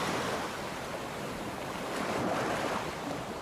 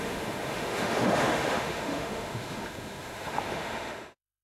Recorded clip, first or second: first